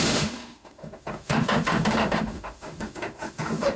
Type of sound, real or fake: fake